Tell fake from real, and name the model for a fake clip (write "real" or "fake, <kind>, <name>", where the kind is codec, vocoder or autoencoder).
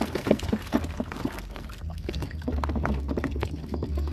fake, codec, SNAC